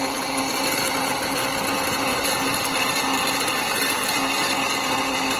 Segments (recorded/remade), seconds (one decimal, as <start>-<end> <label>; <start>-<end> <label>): 0.0-5.4 recorded